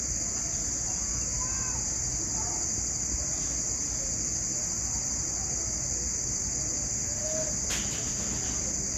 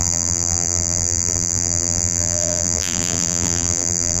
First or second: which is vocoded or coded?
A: second